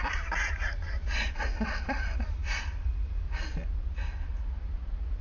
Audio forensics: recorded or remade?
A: recorded